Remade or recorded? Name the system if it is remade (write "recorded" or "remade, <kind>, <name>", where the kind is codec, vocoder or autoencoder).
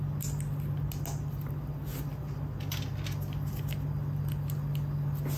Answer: recorded